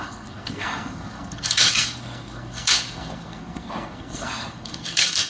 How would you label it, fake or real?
fake